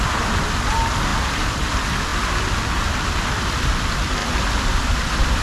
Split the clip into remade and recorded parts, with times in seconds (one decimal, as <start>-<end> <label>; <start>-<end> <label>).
0.0-1.1 recorded; 1.1-1.6 remade; 1.6-4.2 recorded; 4.2-5.4 remade